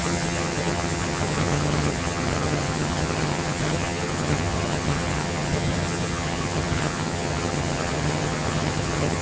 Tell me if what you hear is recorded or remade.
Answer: remade